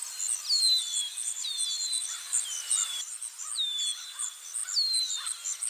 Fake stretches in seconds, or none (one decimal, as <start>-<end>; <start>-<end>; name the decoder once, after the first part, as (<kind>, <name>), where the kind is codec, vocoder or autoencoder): none